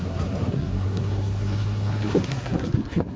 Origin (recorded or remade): remade